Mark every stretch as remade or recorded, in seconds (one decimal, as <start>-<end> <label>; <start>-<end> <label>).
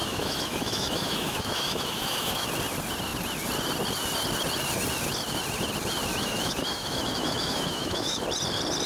0.0-2.5 remade; 2.5-6.1 recorded; 6.1-8.2 remade; 8.2-8.9 recorded